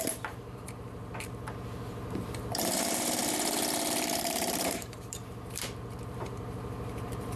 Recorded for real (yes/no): no